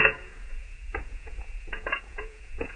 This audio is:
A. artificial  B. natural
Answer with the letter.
A